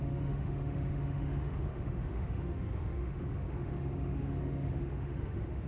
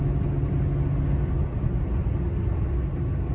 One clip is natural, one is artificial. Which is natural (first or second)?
second